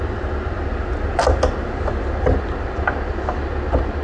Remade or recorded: recorded